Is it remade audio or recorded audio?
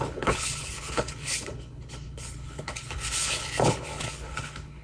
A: remade